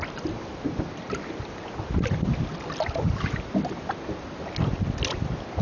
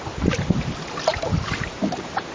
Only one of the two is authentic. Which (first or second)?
first